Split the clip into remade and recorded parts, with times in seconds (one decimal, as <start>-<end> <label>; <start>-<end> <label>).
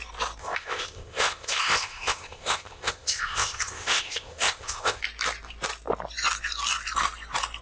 0.0-0.4 recorded; 0.4-5.0 remade; 5.0-7.6 recorded